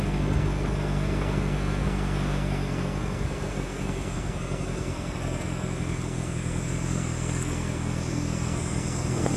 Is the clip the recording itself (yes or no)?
no